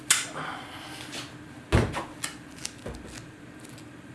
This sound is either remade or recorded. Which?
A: recorded